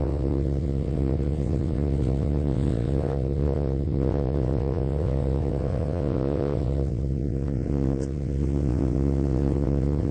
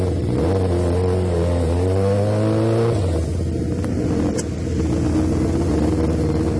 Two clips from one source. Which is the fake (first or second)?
first